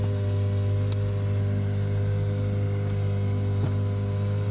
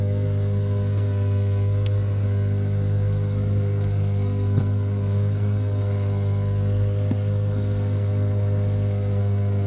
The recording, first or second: first